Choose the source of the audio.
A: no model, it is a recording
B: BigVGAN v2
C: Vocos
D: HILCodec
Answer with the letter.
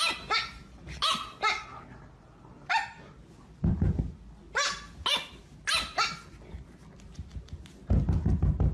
A